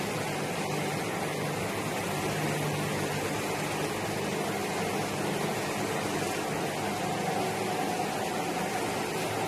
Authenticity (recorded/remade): recorded